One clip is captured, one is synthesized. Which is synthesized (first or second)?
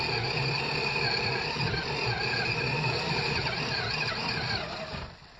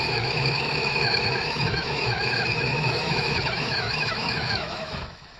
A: second